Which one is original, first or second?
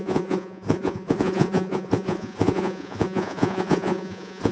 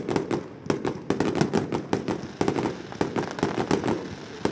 second